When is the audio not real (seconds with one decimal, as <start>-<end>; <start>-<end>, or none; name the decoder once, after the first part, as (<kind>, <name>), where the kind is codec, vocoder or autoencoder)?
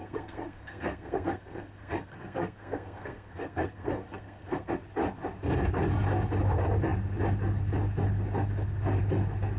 0.0-4.7 (codec, SNAC)